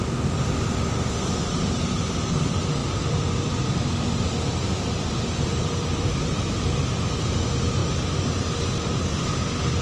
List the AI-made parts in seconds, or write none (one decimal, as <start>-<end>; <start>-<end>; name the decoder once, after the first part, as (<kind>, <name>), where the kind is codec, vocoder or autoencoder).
0.0-7.8 (vocoder, BigVGAN v2); 9.0-9.8